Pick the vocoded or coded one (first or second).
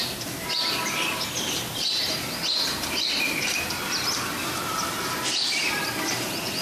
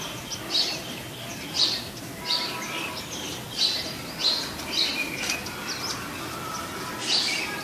first